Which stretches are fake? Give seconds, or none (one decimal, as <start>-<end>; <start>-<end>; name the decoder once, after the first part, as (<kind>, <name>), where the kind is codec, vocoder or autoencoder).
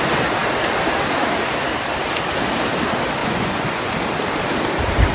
3.2-3.9 (vocoder, Vocos)